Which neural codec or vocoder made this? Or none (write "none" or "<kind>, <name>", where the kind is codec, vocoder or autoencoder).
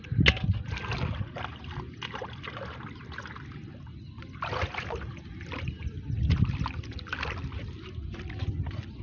none